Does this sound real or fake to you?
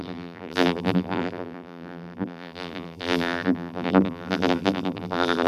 fake